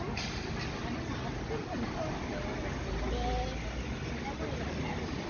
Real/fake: real